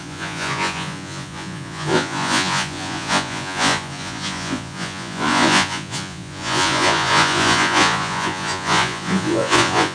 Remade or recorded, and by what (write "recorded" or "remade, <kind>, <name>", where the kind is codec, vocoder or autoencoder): remade, vocoder, Vocos